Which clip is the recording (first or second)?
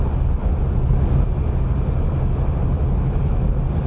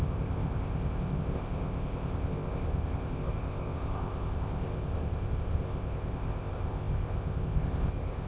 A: first